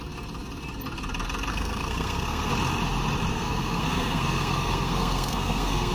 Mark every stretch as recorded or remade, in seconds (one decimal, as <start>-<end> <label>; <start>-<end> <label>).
0.0-1.5 recorded; 1.5-2.5 remade; 2.5-3.3 recorded; 3.3-5.9 remade